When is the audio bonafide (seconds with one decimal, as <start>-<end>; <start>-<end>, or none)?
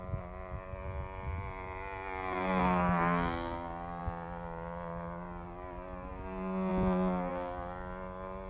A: 0.0-8.5